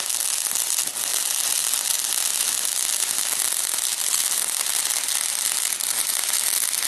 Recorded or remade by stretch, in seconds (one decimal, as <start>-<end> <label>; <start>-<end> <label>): 0.0-6.9 recorded